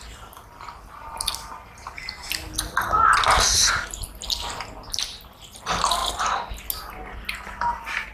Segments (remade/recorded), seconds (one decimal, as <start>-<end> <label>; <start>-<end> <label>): 0.0-8.1 recorded